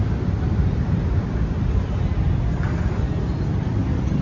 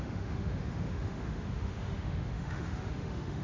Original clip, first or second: first